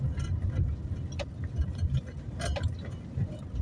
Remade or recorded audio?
recorded